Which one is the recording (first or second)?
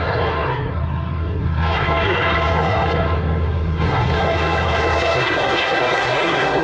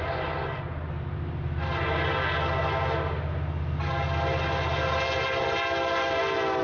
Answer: second